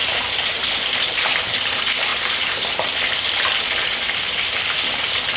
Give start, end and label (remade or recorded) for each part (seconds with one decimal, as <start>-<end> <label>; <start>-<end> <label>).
0.0-1.3 remade; 1.3-2.1 recorded; 2.1-3.6 remade; 3.6-5.4 recorded